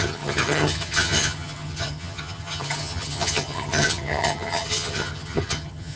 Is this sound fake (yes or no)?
yes